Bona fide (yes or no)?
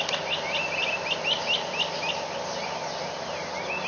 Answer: yes